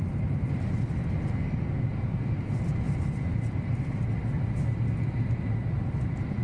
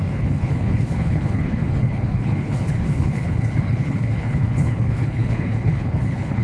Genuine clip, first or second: first